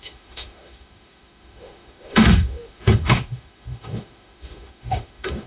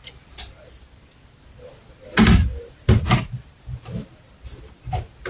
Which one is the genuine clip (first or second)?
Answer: second